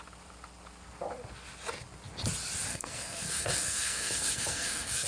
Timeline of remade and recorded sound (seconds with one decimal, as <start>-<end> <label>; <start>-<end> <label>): 0.0-2.7 recorded; 2.7-5.1 remade